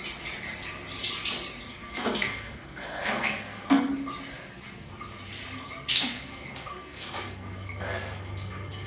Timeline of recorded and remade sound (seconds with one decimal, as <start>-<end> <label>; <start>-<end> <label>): 0.0-1.7 recorded; 1.7-3.9 remade; 3.9-5.9 recorded; 5.9-8.9 remade